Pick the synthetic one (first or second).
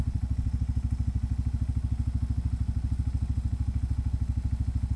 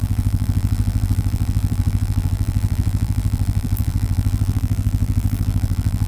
second